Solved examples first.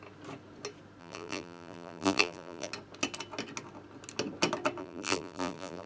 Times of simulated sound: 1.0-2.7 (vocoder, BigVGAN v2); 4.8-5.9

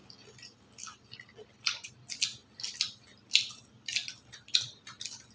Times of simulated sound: 0.0-0.6 (vocoder, BigVGAN v2); 2.4-5.3